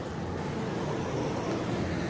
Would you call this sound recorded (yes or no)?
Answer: yes